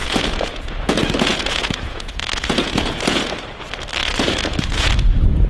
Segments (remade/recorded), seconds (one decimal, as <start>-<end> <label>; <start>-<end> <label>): 0.0-3.3 remade; 3.3-4.0 recorded; 4.0-4.9 remade; 4.9-5.5 recorded